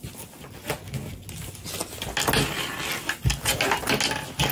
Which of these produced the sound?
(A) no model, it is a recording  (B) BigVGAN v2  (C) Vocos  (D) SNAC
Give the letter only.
A